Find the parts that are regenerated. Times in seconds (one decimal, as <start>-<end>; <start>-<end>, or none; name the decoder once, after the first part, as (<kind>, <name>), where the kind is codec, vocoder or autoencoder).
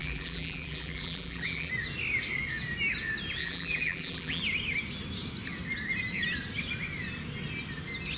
0.0-1.7 (vocoder, BigVGAN v2); 3.4-4.4